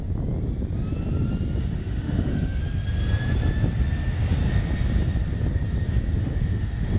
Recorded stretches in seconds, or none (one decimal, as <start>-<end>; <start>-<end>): 0.0-1.6; 2.6-6.2